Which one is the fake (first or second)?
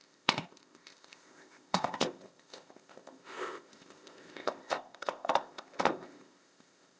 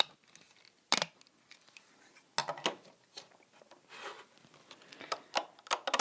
first